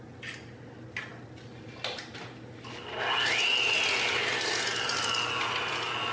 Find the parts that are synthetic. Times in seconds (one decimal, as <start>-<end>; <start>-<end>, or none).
none